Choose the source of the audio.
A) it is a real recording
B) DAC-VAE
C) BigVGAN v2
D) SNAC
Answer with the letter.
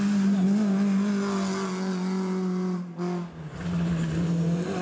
A